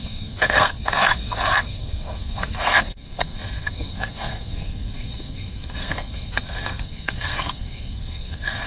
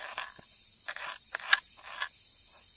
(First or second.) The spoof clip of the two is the first